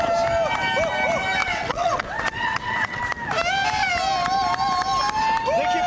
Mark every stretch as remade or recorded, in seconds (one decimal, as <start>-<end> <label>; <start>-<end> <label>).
0.0-1.4 recorded; 1.4-3.0 remade; 3.0-5.9 recorded